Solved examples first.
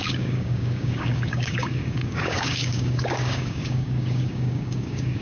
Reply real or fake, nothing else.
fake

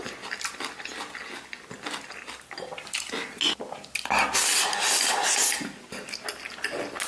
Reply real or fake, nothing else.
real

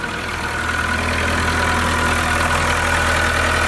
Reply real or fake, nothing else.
real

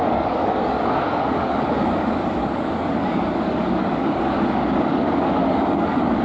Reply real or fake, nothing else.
fake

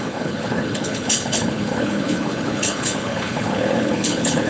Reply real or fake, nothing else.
fake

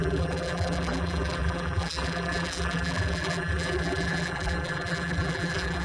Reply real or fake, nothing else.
fake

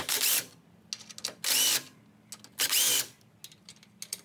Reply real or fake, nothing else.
real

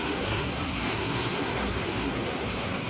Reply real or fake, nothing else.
fake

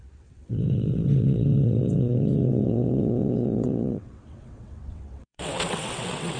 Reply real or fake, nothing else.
fake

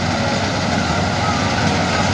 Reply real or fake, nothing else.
real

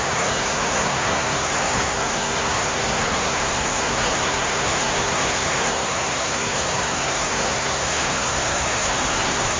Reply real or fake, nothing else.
fake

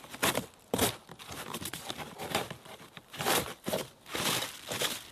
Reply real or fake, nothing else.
real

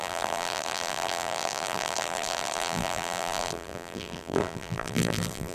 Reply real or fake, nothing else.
fake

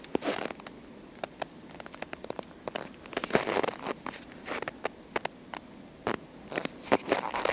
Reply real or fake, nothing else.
real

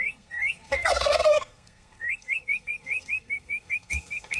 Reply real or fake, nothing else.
fake